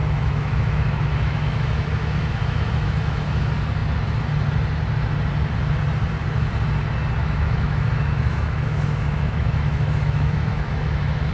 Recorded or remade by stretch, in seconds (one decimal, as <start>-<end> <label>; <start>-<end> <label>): 0.0-3.3 remade; 3.3-7.2 recorded; 7.2-11.3 remade